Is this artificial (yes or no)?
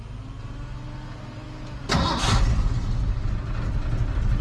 no